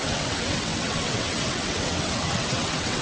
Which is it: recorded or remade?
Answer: remade